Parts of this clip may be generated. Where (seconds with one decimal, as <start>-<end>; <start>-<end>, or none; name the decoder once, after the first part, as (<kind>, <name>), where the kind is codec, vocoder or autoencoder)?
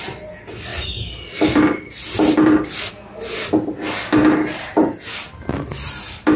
0.7-2.9 (vocoder, BigVGAN v2)